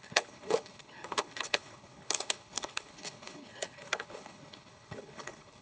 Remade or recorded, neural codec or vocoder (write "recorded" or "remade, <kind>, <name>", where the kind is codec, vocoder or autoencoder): remade, codec, HILCodec